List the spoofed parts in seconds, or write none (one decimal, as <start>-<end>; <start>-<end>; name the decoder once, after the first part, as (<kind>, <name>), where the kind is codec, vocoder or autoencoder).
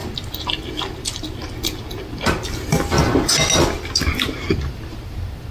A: none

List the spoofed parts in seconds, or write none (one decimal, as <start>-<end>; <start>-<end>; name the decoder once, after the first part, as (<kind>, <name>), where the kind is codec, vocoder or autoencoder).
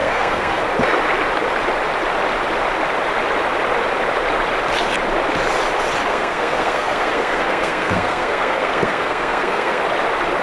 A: 0.0-0.6 (codec, SNAC); 6.1-9.8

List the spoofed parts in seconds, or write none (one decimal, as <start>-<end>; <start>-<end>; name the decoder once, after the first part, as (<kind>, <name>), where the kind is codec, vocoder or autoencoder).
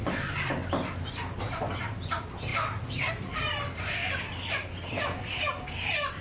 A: 0.0-0.6 (vocoder, BigVGAN v2); 1.1-2.5; 3.1-6.2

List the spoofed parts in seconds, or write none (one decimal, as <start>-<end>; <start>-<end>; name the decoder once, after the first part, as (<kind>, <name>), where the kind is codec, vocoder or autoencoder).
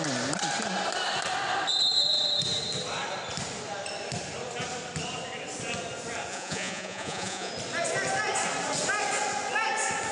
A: 6.3-7.5 (vocoder, Vocos)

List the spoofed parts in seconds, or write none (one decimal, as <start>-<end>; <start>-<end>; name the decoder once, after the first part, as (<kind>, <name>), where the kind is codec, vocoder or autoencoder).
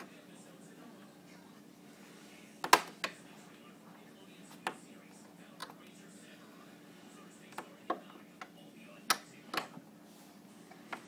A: none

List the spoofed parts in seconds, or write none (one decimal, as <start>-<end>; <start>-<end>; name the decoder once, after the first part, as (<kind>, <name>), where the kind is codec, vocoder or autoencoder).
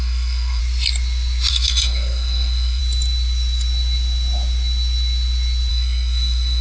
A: 0.0-0.6 (codec, SNAC); 1.5-2.8; 5.7-6.6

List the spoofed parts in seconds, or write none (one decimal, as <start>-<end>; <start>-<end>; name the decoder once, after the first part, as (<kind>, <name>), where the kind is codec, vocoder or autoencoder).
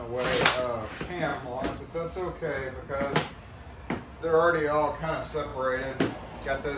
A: 1.3-1.8 (vocoder, BigVGAN v2); 2.6-3.3